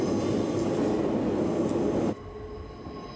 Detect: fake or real real